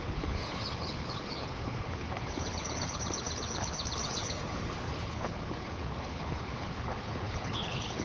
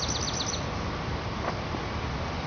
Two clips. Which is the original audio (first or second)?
second